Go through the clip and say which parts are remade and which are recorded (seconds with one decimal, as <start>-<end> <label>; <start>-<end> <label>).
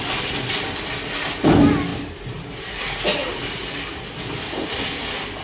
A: 0.0-1.9 recorded; 1.9-2.8 remade; 2.8-5.4 recorded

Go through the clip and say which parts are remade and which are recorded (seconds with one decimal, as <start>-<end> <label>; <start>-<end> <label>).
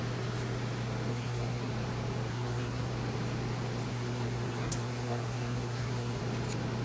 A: 0.0-1.1 recorded; 1.1-1.7 remade; 1.7-2.3 recorded; 2.3-2.9 remade; 2.9-3.9 recorded; 3.9-6.2 remade; 6.2-6.8 recorded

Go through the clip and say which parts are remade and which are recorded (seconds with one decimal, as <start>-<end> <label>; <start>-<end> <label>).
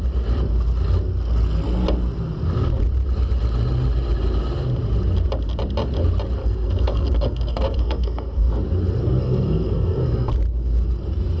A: 0.0-6.4 recorded; 6.4-8.5 remade; 8.5-9.0 recorded; 9.0-10.3 remade; 10.3-11.4 recorded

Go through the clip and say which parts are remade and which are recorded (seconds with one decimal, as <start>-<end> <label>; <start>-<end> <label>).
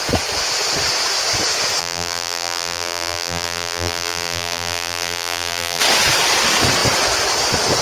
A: 0.0-1.8 recorded; 1.8-5.8 remade; 5.8-7.8 recorded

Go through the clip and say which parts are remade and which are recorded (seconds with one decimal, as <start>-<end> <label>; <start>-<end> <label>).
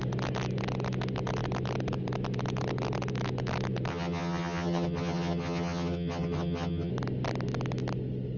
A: 0.0-3.9 recorded; 3.9-6.9 remade; 6.9-8.4 recorded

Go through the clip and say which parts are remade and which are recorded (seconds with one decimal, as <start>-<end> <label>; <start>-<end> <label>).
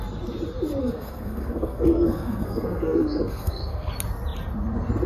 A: 0.0-0.8 recorded; 0.8-3.9 remade; 3.9-5.1 recorded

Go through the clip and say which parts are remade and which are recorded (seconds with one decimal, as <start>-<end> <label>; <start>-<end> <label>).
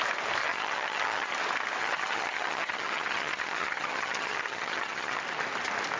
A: 0.0-0.4 recorded; 0.4-1.3 remade; 1.3-1.8 recorded; 1.8-5.2 remade; 5.2-6.0 recorded